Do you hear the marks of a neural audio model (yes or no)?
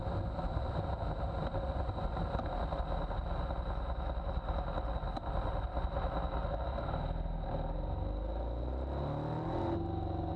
no